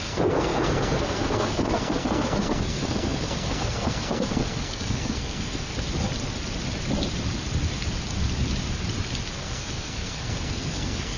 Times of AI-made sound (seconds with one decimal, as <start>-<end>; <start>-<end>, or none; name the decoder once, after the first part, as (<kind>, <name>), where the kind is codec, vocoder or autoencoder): 0.0-5.7 (codec, SNAC); 9.3-11.2